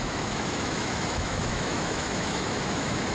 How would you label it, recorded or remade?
remade